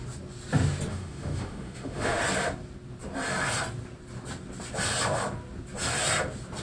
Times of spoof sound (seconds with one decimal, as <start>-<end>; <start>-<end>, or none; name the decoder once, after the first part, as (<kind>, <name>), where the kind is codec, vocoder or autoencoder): 0.9-2.2 (autoencoder, DAC-VAE)